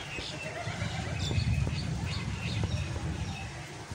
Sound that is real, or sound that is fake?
real